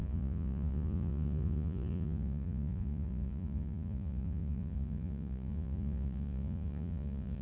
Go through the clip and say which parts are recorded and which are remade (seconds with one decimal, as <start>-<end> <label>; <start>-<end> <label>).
0.0-7.4 remade